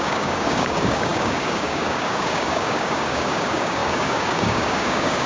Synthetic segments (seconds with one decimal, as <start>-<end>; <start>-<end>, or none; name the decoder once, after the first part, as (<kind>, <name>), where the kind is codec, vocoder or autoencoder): 0.0-5.3 (codec, DAC)